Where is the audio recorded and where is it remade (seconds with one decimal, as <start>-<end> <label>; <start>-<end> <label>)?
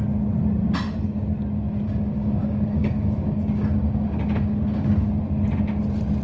0.0-1.8 recorded; 1.8-5.2 remade; 5.2-6.2 recorded